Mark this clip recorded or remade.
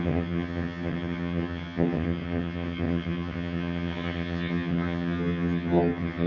remade